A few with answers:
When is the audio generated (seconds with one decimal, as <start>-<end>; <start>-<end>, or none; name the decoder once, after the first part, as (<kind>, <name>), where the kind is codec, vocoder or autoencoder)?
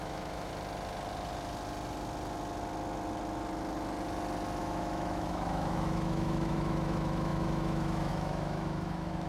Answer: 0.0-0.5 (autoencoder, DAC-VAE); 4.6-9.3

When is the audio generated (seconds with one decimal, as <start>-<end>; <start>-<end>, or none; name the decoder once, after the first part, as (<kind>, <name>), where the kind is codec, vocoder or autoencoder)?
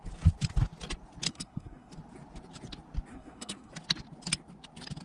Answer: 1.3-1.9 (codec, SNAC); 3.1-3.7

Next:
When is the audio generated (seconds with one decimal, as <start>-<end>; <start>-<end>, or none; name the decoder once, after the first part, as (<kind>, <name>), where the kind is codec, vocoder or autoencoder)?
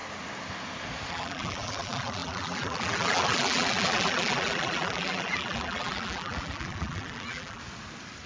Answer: 1.1-7.6 (vocoder, BigVGAN v2)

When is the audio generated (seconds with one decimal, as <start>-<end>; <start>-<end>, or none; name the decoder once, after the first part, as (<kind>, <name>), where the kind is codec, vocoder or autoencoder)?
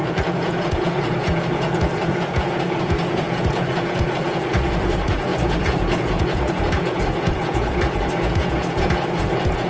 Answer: 0.0-9.7 (vocoder, Vocos)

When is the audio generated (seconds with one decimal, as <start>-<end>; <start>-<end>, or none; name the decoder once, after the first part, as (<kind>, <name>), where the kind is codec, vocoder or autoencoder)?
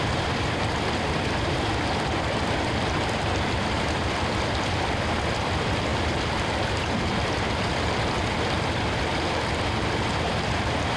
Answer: 0.0-11.0 (vocoder, BigVGAN v2)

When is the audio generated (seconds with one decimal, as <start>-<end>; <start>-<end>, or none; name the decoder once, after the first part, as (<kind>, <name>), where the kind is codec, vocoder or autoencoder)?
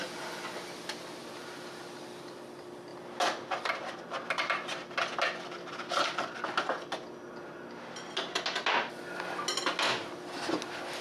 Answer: none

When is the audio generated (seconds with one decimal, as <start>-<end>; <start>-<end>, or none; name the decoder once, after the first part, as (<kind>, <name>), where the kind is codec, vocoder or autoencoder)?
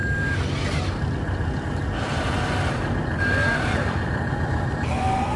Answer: none